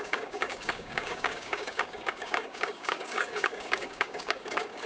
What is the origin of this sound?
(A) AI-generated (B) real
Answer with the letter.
A